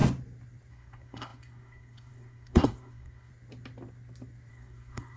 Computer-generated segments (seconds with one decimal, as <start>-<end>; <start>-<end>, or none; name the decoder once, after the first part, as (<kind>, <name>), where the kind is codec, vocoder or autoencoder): 0.7-3.3 (codec, SNAC); 4.5-5.2

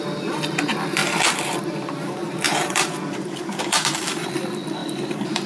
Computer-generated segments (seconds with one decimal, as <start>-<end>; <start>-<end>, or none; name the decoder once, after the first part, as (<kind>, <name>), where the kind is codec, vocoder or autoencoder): 1.0-4.3 (vocoder, BigVGAN v2); 4.8-5.5

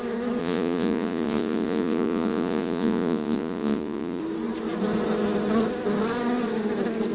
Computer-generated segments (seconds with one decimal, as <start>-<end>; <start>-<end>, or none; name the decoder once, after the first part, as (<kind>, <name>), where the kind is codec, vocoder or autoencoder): 0.4-4.2 (vocoder, Vocos)